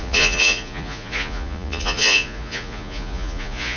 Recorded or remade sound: remade